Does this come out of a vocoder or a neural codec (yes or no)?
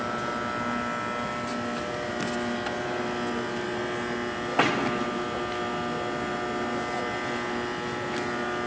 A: no